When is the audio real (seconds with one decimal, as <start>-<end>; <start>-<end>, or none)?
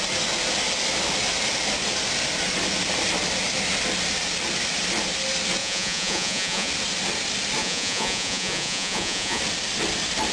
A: 0.0-5.6; 6.7-7.6; 9.4-10.3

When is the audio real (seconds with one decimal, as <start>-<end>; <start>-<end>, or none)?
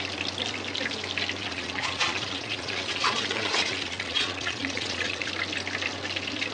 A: 0.0-1.4; 5.3-6.5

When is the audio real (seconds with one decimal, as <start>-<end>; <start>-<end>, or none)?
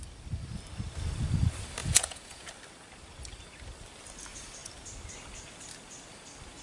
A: 0.0-1.8; 2.5-6.6